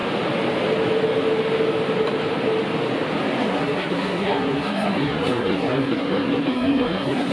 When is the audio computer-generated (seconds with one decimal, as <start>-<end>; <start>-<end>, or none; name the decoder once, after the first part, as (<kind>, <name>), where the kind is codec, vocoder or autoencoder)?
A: 3.4-7.3 (codec, SNAC)